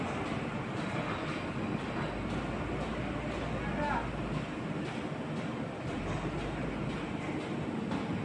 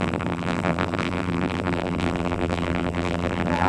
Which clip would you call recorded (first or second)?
first